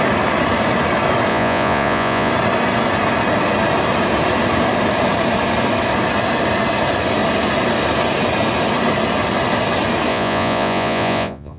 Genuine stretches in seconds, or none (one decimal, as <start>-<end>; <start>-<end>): 0.0-1.3; 2.3-10.1